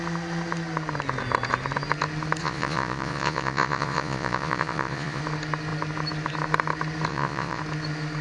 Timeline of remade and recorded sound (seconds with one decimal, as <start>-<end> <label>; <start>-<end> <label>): 0.0-2.4 recorded; 2.4-5.2 remade; 5.2-7.1 recorded; 7.1-7.6 remade; 7.6-8.2 recorded

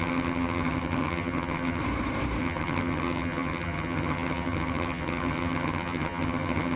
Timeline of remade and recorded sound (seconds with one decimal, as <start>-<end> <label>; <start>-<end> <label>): 0.0-1.8 remade; 1.8-2.4 recorded; 2.4-6.8 remade

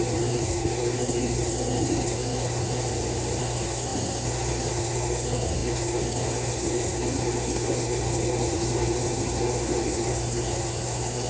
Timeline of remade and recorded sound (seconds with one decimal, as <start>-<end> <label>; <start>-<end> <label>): 0.0-2.9 remade; 2.9-3.4 recorded; 3.4-11.3 remade